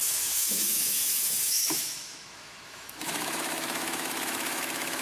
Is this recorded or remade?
remade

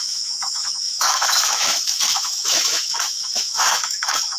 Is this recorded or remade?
remade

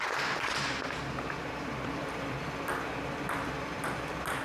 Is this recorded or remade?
recorded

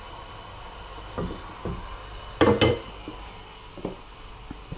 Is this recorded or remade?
recorded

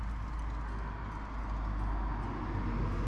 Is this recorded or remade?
recorded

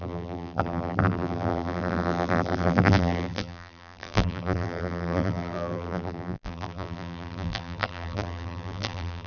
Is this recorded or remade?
remade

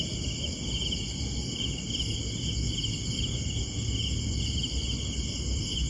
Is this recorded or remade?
recorded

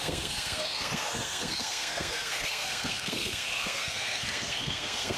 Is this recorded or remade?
remade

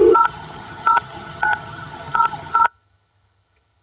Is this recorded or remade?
remade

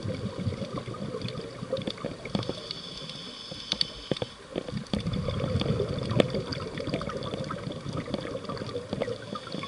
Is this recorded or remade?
recorded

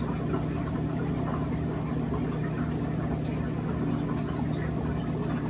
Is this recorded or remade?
recorded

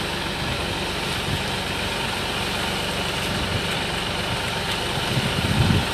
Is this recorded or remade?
recorded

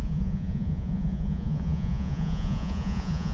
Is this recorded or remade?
remade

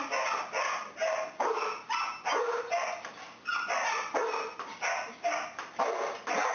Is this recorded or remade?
recorded